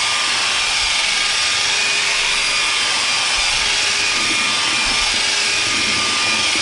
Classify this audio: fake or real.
real